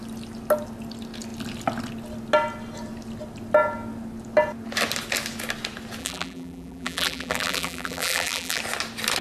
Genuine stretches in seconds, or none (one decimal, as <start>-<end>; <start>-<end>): 0.0-6.0; 8.6-9.2